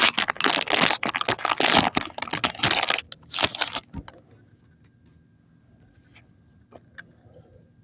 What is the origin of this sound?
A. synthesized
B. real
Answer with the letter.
B